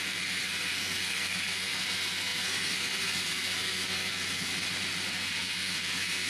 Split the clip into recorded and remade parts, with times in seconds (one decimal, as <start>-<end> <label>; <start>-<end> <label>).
0.0-4.5 remade; 4.5-5.1 recorded; 5.1-6.3 remade